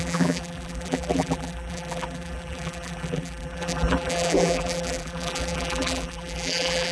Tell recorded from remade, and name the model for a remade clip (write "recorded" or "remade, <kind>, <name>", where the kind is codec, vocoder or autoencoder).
remade, vocoder, BigVGAN v2